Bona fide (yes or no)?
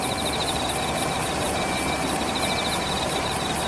yes